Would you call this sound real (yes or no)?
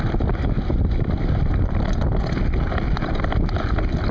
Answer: yes